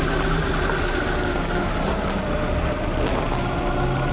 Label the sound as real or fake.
real